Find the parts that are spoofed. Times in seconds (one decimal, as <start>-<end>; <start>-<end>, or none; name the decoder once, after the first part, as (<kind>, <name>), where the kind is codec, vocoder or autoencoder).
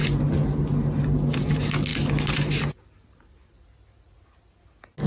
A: none